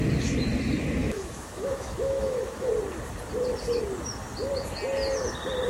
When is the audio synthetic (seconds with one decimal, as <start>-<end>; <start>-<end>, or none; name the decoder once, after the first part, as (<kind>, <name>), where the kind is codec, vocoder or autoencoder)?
1.0-2.7 (autoencoder, DAC-VAE)